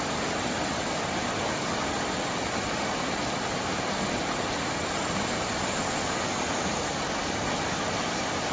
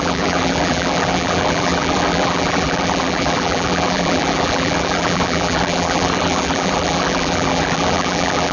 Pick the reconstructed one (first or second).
second